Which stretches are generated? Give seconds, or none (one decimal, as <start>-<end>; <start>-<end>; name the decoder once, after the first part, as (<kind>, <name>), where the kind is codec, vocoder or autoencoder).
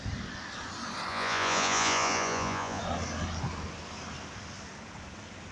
1.1-2.8 (vocoder, Vocos)